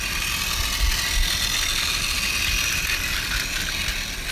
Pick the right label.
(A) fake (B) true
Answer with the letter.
B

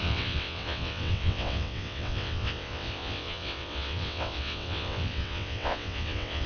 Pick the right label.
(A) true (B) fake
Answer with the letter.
B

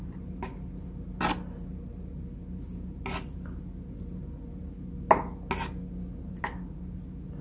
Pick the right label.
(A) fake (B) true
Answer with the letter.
B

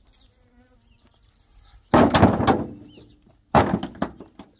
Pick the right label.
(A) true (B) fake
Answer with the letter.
A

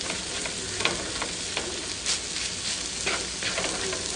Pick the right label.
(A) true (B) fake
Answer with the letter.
A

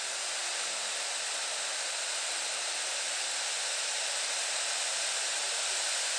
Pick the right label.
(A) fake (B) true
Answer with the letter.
B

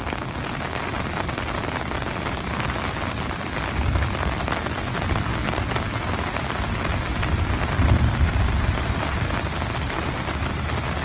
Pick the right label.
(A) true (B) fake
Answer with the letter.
A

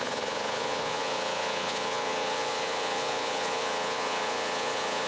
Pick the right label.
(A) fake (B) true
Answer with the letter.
A